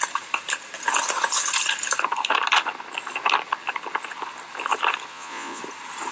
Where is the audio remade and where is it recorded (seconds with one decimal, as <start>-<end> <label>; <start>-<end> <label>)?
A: 0.0-5.1 recorded; 5.1-5.6 remade; 5.6-6.1 recorded